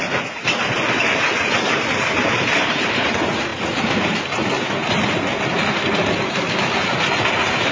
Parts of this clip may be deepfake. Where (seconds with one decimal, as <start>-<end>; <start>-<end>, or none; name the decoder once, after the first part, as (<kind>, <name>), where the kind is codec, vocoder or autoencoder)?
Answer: 0.0-4.8 (vocoder, BigVGAN v2); 6.8-7.7